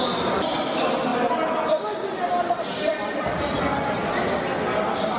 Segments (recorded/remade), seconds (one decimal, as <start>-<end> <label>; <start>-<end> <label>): 0.0-5.2 recorded

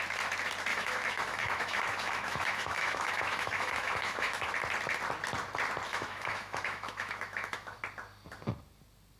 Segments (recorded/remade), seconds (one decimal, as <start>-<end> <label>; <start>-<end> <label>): 0.0-0.7 recorded; 0.7-4.5 remade; 4.5-5.9 recorded; 5.9-7.8 remade; 7.8-9.2 recorded

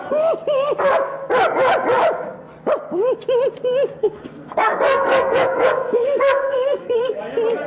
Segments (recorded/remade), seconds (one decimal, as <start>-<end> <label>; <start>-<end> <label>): 0.0-4.0 recorded; 4.0-7.2 remade; 7.2-7.7 recorded

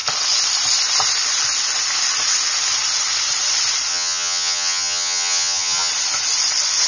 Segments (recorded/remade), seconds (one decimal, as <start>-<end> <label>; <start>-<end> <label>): 0.0-3.9 recorded; 3.9-5.9 remade; 5.9-6.9 recorded

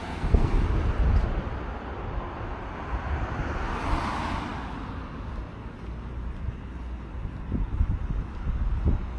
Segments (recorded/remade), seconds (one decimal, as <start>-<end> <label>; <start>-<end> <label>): 0.0-0.5 remade; 0.5-9.2 recorded

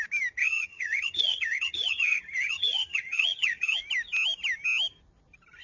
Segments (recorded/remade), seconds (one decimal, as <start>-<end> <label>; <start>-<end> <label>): 0.0-0.4 recorded; 0.4-3.8 remade; 3.8-5.6 recorded

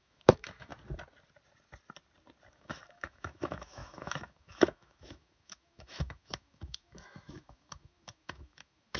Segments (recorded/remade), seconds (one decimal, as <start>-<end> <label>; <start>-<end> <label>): 0.0-0.7 remade; 0.7-2.5 recorded; 2.5-9.0 remade

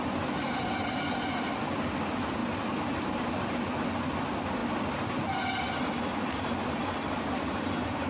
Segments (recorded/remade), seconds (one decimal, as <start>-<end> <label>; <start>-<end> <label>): 0.0-2.4 recorded; 2.4-3.6 remade; 3.6-8.1 recorded